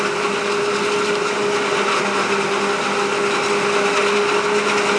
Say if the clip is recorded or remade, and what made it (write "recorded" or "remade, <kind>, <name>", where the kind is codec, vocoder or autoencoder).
recorded